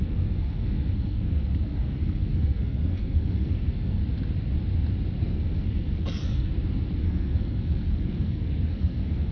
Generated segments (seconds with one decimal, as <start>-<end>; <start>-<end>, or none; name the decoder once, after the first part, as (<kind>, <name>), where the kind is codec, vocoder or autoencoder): 0.0-4.0 (codec, SNAC); 5.2-6.5; 7.0-9.3